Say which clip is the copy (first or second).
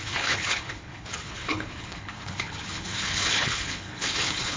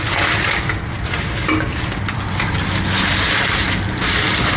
first